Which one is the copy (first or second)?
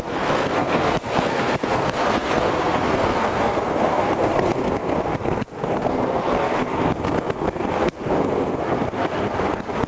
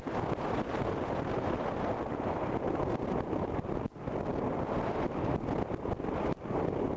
first